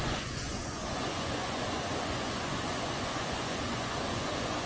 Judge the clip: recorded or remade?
remade